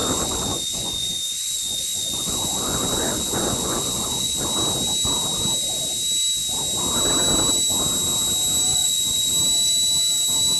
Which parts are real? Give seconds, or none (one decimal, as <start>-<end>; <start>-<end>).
4.3-8.7; 9.3-10.6